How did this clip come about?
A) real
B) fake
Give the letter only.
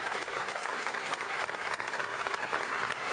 B